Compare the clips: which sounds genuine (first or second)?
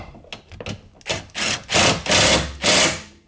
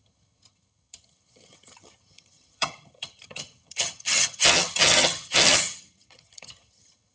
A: first